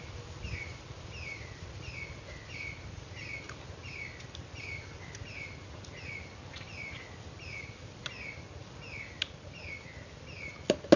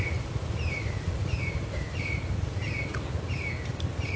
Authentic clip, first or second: first